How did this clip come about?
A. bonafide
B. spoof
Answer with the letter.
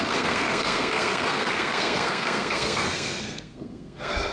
B